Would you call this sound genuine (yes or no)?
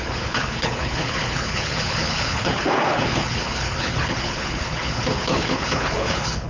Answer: no